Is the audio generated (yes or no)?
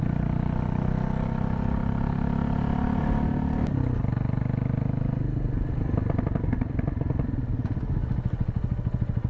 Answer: no